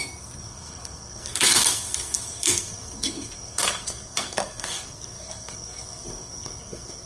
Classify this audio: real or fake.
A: fake